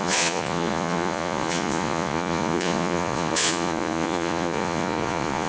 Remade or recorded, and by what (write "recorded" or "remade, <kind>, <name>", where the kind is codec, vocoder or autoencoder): remade, vocoder, Vocos